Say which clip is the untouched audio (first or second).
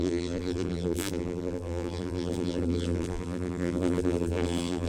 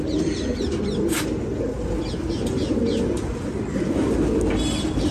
second